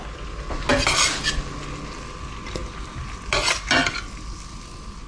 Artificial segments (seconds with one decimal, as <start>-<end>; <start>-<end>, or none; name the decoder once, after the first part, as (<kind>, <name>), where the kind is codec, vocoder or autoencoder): none